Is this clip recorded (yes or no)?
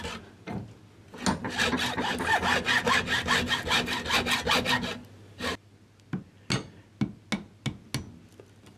yes